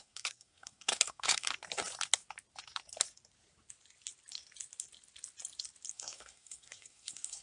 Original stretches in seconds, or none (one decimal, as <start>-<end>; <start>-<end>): 1.5-5.9